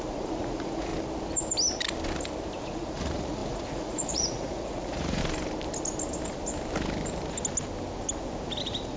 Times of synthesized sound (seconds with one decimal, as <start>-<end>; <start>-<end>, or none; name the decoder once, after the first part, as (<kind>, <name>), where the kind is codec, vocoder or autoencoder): 0.0-0.9 (vocoder, Vocos); 2.6-5.2; 8.6-9.0